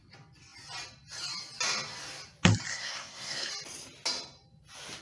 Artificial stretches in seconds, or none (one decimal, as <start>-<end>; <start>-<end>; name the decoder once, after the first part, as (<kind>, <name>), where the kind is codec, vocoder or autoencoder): 2.7-3.5 (codec, SNAC)